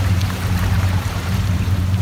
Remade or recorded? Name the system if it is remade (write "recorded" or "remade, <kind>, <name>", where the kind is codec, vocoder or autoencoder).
remade, vocoder, BigVGAN v2